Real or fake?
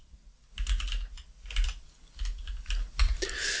real